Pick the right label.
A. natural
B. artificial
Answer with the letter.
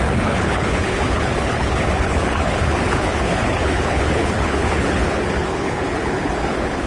B